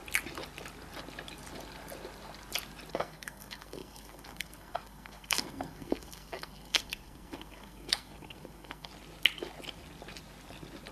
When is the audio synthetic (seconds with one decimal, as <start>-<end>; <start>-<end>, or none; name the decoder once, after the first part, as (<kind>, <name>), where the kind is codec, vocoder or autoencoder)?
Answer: 2.9-8.9 (codec, SNAC)